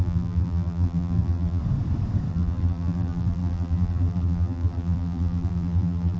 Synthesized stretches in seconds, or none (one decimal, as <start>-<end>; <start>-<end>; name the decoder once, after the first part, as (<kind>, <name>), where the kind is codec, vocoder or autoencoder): 0.0-1.6 (vocoder, BigVGAN v2); 2.3-6.2

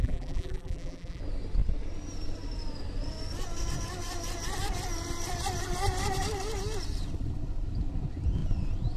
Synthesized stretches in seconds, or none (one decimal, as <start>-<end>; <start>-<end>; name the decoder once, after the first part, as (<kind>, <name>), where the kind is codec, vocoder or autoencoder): 0.0-1.2 (vocoder, BigVGAN v2)

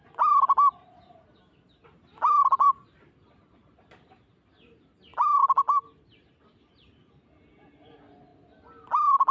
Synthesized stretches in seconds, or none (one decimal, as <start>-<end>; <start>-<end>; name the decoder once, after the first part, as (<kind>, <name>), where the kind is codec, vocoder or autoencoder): 2.1-4.5 (vocoder, BigVGAN v2)